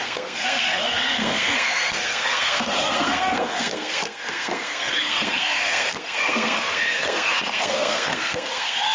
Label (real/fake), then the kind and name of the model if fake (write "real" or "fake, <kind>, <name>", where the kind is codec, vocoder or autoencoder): fake, codec, SNAC